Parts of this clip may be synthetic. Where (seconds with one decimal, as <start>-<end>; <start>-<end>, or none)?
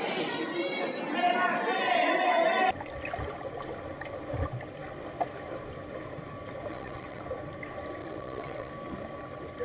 6.7-7.2; 8.0-8.7